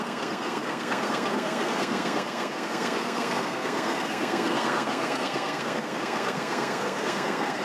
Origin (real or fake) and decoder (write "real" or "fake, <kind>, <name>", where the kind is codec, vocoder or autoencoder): fake, codec, SNAC